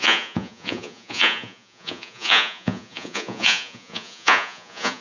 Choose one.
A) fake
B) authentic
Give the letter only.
A